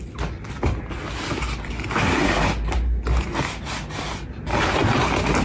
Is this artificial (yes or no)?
no